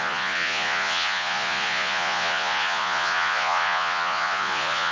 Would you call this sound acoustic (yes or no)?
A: no